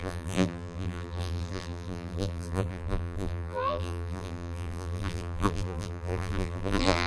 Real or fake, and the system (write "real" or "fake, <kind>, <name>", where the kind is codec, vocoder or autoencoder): fake, vocoder, BigVGAN v2